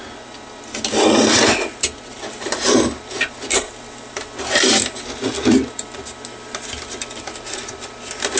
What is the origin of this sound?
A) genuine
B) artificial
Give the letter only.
A